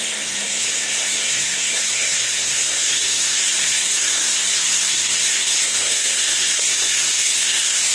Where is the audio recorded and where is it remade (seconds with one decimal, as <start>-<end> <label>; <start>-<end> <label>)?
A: 0.0-7.9 remade